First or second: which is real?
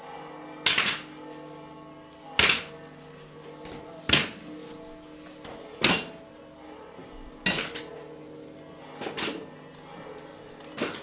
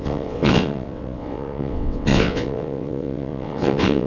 first